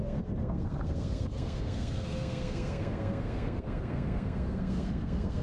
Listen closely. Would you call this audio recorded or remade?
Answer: remade